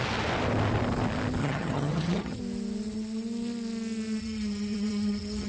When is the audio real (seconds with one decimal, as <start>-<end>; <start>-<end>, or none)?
0.0-1.4; 2.4-4.2